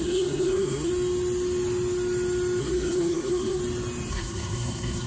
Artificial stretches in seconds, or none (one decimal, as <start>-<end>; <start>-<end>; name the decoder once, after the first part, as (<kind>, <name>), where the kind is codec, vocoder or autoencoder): 0.0-0.9 (codec, SNAC); 2.6-3.6; 4.1-5.1